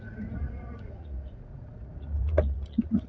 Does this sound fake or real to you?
fake